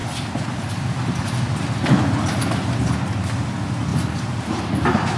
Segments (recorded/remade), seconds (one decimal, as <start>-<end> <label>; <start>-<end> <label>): 0.0-3.9 recorded; 3.9-4.6 remade; 4.6-5.2 recorded